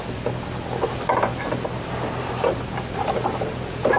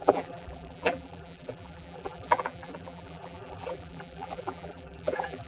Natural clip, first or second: first